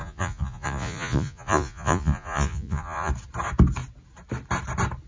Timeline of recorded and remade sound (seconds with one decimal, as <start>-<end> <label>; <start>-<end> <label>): 0.0-3.1 remade; 3.1-5.1 recorded

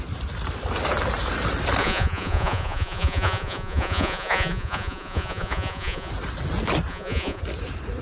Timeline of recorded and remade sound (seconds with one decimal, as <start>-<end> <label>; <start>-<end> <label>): 0.0-1.8 recorded; 1.8-6.1 remade; 6.1-6.9 recorded; 6.9-7.4 remade; 7.4-8.0 recorded

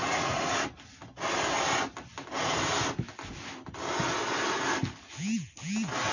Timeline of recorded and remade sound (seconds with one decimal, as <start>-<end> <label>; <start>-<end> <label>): 0.0-0.6 remade; 0.6-6.1 recorded